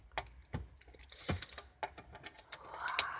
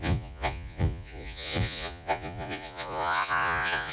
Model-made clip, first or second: second